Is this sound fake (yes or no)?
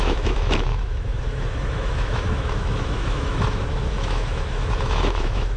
yes